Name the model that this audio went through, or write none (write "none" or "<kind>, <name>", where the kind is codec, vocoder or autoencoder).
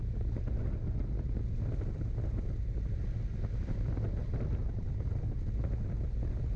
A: none